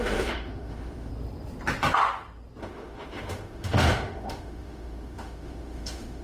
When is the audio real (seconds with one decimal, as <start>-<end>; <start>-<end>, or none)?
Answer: 1.1-2.6